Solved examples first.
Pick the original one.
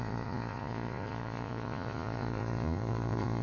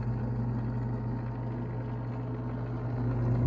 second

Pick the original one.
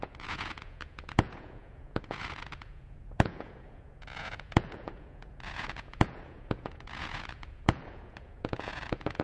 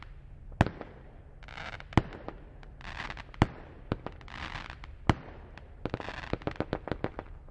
second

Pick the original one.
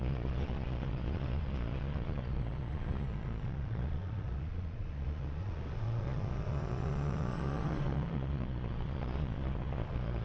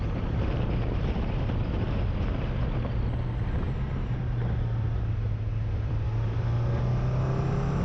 second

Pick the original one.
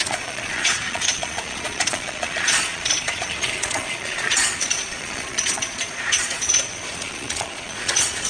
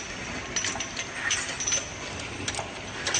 second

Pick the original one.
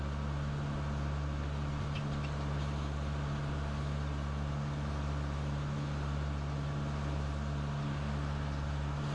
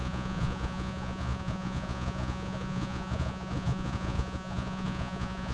first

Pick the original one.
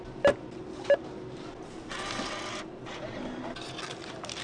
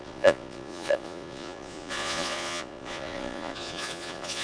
first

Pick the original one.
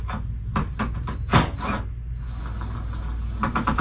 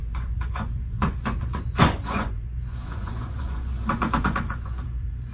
first